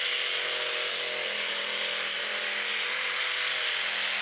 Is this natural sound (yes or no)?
yes